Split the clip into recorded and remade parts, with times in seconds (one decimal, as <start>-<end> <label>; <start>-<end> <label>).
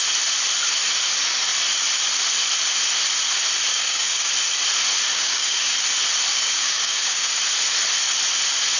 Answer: 0.0-3.7 recorded; 3.7-4.3 remade; 4.3-5.1 recorded; 5.1-5.7 remade; 5.7-6.3 recorded; 6.3-7.4 remade; 7.4-8.8 recorded